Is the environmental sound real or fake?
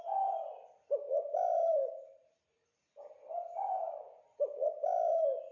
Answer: real